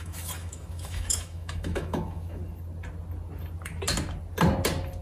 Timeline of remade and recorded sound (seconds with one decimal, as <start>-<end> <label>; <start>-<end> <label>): 0.0-2.4 remade; 2.4-5.0 recorded